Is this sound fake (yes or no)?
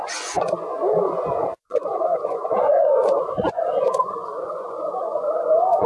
yes